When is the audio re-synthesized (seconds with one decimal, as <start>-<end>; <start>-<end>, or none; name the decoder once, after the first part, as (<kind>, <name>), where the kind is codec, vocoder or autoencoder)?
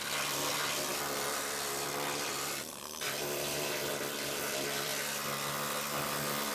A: 0.0-4.9 (vocoder, BigVGAN v2)